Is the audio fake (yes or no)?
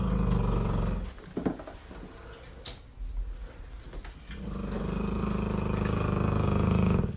no